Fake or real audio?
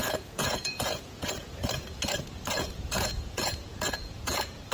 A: fake